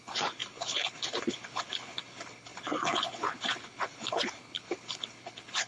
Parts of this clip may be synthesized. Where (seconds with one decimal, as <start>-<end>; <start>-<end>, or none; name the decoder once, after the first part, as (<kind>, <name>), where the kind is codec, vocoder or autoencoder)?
0.0-5.7 (codec, HILCodec)